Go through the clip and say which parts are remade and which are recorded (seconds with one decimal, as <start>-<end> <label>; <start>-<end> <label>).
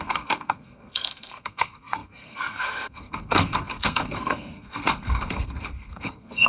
0.0-6.5 remade